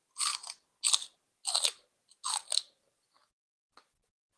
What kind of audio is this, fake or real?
real